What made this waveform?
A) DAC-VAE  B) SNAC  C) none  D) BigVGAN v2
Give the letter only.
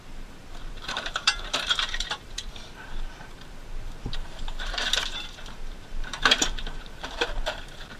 D